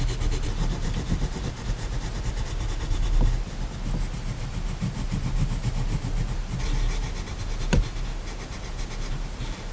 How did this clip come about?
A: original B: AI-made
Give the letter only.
A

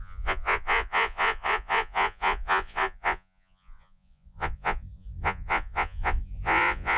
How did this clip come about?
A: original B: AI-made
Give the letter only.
B